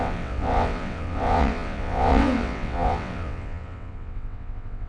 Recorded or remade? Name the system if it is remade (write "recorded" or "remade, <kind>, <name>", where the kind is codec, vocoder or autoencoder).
remade, vocoder, WaveNeXt